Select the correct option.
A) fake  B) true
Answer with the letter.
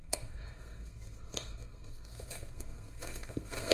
A